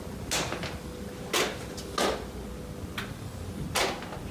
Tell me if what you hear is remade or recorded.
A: recorded